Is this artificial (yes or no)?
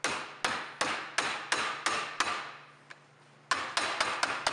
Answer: no